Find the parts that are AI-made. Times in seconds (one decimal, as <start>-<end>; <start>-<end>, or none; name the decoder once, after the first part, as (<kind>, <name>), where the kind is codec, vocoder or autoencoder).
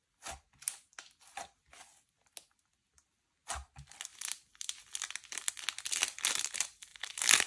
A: 6.9-7.5 (vocoder, BigVGAN v2)